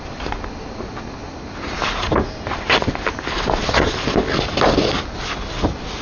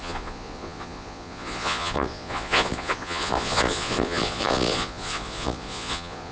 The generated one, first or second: second